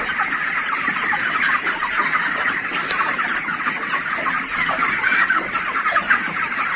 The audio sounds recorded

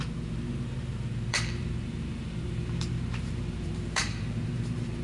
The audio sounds remade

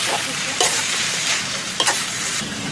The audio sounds remade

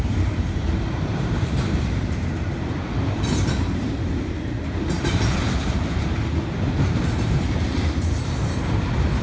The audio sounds remade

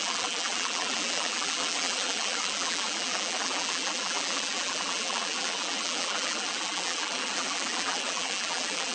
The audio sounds remade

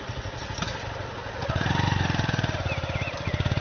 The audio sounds recorded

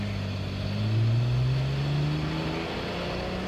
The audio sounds recorded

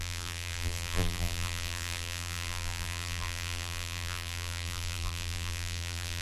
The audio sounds remade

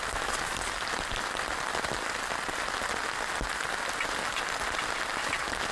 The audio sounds recorded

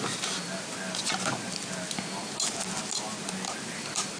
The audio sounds recorded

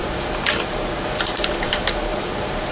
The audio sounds remade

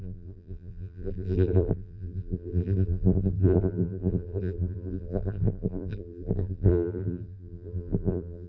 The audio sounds remade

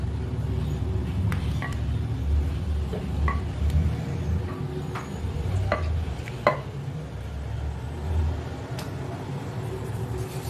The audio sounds recorded